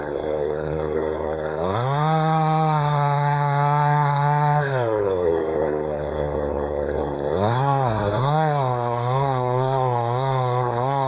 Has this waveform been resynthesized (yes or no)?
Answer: yes